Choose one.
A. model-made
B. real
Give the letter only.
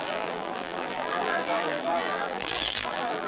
A